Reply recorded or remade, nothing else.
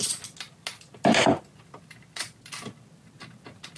recorded